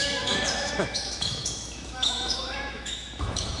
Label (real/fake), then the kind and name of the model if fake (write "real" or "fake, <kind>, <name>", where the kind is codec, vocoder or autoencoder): fake, autoencoder, DAC-VAE